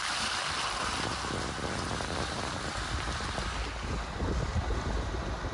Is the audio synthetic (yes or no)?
no